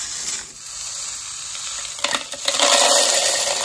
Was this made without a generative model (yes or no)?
yes